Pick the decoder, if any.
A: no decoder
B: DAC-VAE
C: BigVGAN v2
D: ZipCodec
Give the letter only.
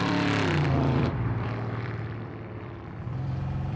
C